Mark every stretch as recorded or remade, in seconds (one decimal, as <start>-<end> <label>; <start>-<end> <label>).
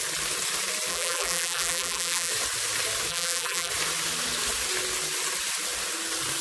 0.0-0.9 recorded; 0.9-2.3 remade; 2.3-3.1 recorded; 3.1-3.7 remade; 3.7-6.4 recorded